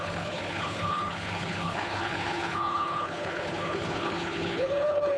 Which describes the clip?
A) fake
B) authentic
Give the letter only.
A